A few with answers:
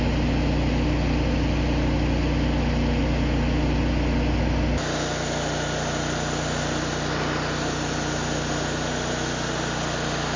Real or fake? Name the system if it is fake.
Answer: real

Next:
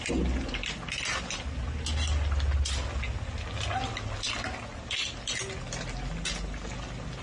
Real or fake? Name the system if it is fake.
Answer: real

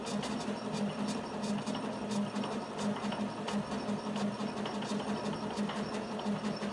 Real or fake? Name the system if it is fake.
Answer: real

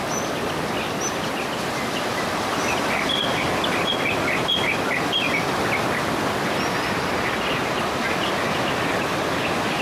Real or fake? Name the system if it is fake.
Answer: real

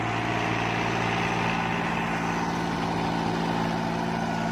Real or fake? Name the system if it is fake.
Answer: real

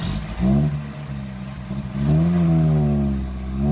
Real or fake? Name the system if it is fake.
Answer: real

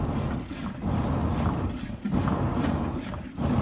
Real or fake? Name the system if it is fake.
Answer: real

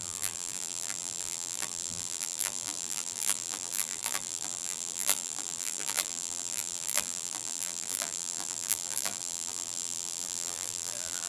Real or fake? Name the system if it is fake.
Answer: fake, vocoder, BigVGAN v2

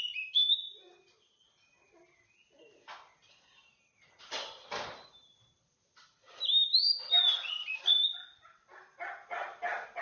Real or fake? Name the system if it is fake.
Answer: real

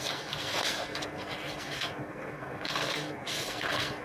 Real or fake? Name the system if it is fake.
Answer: fake, codec, SNAC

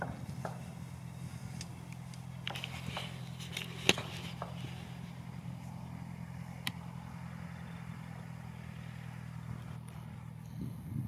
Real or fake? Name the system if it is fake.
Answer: real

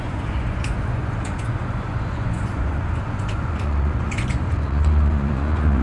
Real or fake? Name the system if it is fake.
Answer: fake, vocoder, Vocos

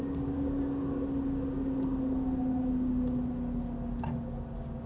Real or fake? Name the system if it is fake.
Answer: real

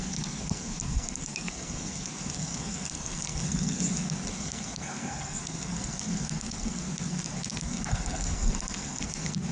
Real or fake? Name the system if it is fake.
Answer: fake, codec, SNAC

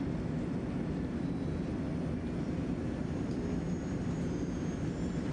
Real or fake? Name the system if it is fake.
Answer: real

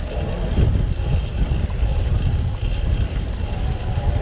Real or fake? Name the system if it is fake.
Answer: real